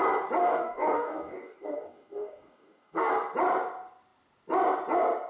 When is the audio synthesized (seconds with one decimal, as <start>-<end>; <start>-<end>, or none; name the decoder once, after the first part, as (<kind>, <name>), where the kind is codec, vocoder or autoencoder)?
0.4-3.1 (codec, DAC)